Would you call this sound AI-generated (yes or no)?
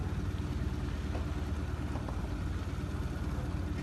no